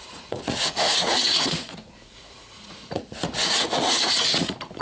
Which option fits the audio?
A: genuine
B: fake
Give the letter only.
B